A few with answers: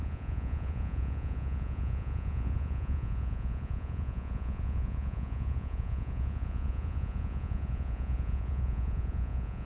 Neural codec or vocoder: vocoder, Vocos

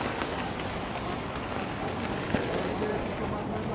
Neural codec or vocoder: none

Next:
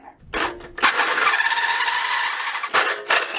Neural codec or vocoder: none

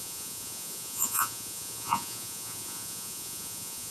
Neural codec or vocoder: vocoder, Vocos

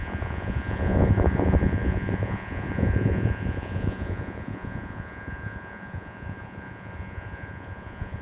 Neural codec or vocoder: vocoder, Vocos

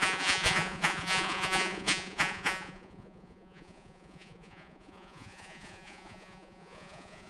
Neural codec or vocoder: vocoder, Vocos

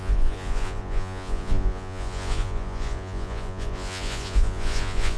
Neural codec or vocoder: vocoder, Vocos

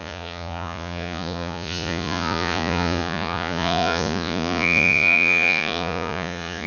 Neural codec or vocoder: vocoder, Vocos